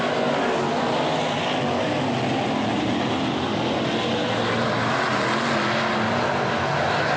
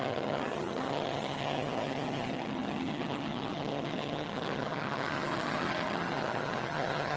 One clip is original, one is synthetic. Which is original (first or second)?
first